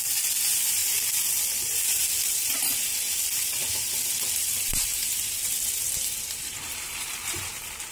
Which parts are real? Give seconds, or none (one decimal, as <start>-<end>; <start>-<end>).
0.0-4.4